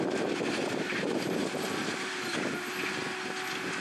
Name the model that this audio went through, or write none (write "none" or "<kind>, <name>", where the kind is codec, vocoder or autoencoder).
none